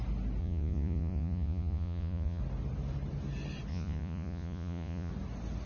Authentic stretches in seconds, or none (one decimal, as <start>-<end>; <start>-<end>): 0.0-0.4; 2.4-3.7; 5.1-5.7